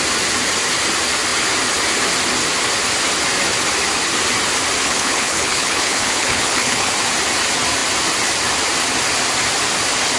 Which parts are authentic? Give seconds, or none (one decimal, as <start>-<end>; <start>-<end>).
0.0-4.8; 6.9-10.2